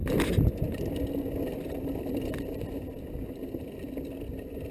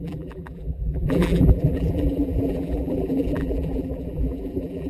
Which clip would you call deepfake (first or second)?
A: second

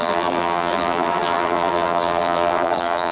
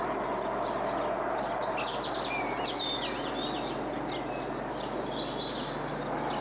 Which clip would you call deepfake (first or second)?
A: first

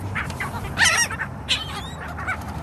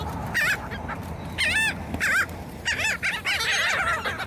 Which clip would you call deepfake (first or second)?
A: first